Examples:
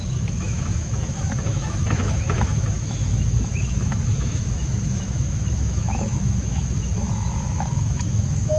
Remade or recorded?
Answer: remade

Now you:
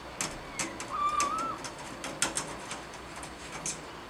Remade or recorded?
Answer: recorded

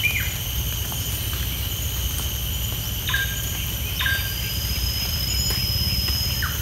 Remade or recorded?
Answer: recorded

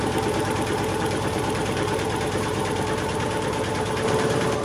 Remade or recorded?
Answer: remade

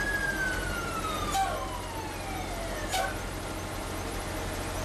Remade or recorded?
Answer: recorded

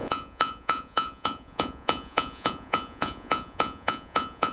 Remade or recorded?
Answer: remade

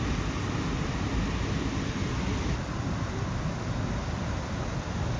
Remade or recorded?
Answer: recorded